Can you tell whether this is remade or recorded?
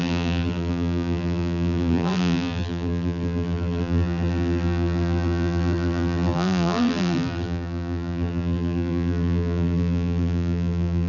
remade